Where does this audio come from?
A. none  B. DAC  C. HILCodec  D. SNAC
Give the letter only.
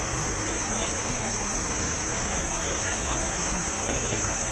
D